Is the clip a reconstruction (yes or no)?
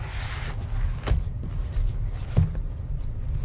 no